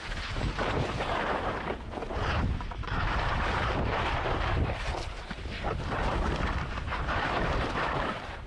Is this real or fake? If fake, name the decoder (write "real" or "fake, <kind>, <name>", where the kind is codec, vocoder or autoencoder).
fake, vocoder, BigVGAN v2